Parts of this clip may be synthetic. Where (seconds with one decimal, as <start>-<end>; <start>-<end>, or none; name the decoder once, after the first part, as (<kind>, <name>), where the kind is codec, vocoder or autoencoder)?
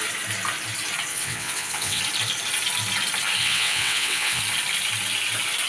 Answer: 1.1-2.0 (vocoder, WaveNeXt); 3.4-4.4